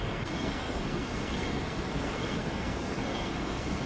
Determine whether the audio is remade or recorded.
remade